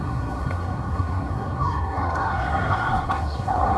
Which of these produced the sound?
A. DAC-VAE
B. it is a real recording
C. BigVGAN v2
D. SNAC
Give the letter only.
D